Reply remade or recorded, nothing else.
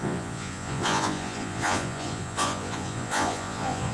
remade